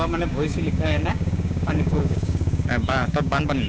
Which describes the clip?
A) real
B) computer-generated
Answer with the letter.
B